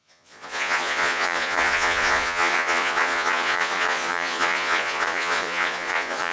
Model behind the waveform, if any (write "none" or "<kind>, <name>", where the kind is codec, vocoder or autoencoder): vocoder, Vocos